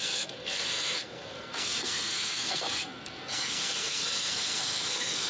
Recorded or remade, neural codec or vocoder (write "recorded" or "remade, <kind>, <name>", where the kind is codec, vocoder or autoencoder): remade, codec, SNAC